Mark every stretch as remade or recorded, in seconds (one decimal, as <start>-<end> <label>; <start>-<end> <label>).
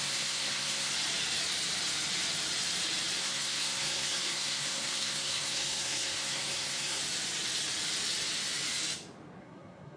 0.0-0.9 remade; 0.9-3.2 recorded; 3.2-7.0 remade; 7.0-9.4 recorded; 9.4-10.0 remade